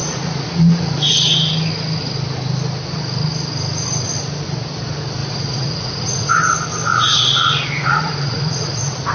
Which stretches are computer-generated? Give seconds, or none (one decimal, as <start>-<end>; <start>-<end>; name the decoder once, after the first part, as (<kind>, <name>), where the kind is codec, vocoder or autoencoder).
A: 0.0-1.1 (vocoder, Vocos); 5.2-6.3; 6.9-9.1